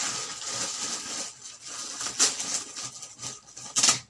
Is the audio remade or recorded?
recorded